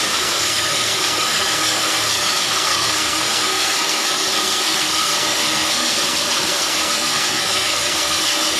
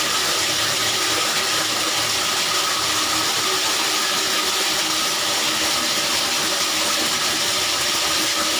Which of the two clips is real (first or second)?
second